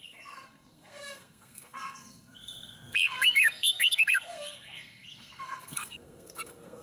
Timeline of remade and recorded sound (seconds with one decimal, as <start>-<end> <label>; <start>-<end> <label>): 0.0-6.8 remade